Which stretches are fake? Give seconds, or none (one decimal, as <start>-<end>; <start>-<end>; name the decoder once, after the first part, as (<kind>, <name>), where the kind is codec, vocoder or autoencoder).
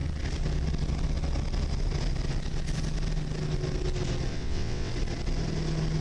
4.3-4.9 (vocoder, WaveNeXt)